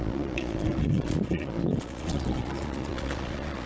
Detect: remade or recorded remade